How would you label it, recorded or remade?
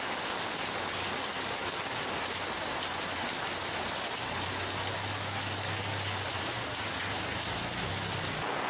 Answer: recorded